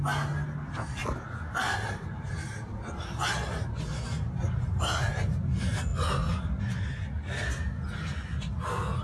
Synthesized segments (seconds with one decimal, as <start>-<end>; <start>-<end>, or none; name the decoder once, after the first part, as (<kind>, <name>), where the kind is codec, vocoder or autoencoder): 1.0-5.4 (vocoder, BigVGAN v2)